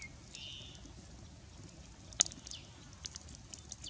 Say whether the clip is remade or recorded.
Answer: recorded